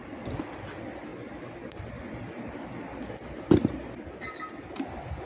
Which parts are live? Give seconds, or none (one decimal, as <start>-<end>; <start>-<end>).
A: 0.0-5.3